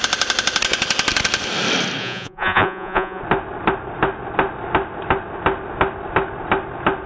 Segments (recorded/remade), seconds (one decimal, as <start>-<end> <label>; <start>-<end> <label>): 0.0-2.0 recorded; 2.0-3.2 remade; 3.2-7.1 recorded